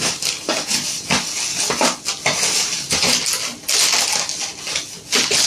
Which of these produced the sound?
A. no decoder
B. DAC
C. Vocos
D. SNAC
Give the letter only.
A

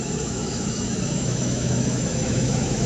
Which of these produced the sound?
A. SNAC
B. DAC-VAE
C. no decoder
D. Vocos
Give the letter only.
B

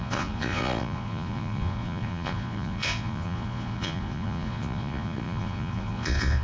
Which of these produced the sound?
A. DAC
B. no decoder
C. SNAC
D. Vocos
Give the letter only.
D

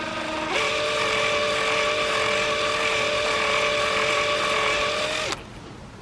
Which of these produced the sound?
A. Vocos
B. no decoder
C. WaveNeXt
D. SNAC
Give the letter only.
B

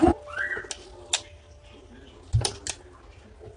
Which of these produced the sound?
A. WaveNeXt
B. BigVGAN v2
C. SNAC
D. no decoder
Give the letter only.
D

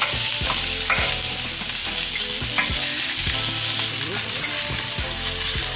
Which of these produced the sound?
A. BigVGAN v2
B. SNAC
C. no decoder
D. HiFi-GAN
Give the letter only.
C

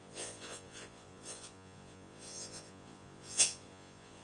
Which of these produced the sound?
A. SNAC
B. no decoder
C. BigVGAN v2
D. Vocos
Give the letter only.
D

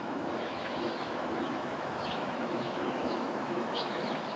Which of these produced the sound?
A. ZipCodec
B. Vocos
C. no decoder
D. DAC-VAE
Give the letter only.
D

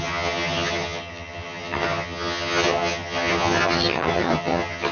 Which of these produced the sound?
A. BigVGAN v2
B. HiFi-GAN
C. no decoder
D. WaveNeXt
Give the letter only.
B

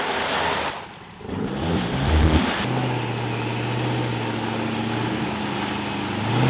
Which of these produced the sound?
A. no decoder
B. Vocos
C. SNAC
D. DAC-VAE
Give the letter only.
A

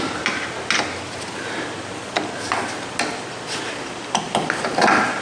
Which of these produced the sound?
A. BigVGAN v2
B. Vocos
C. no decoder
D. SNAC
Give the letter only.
C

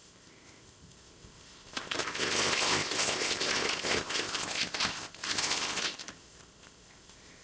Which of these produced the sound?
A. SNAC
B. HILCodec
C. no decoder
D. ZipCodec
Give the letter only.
D